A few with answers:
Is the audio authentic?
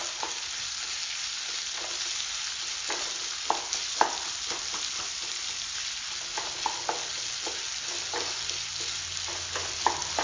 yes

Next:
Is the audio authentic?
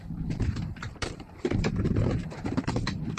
no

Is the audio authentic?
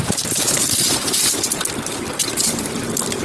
yes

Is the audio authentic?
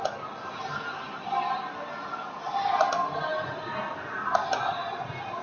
yes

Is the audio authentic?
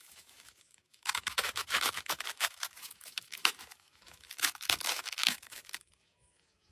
no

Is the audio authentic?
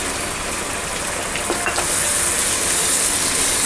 yes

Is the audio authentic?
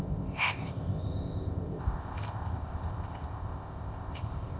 no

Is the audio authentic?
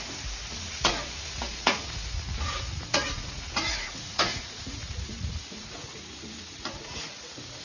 no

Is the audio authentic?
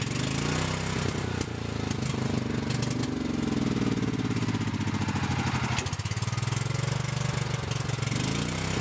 yes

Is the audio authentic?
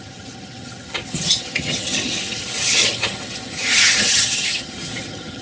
no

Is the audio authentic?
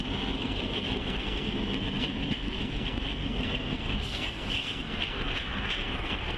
no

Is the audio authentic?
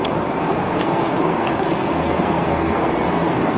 no